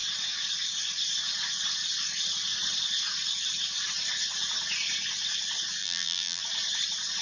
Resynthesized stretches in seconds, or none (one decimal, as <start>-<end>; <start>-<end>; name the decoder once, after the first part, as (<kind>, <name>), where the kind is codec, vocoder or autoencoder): 5.8-6.4 (vocoder, BigVGAN v2)